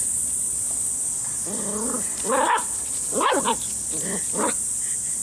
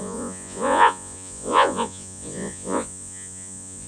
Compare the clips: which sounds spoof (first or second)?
second